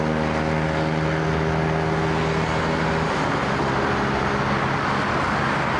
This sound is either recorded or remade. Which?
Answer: recorded